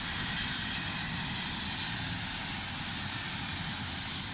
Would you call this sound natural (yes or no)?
yes